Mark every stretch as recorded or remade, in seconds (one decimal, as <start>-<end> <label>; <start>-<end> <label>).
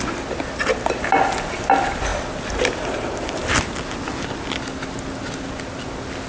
0.0-6.3 recorded